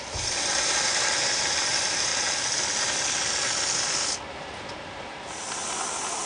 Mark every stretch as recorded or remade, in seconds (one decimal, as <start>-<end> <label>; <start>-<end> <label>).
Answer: 0.0-2.1 remade; 2.1-4.3 recorded; 4.3-5.6 remade; 5.6-6.3 recorded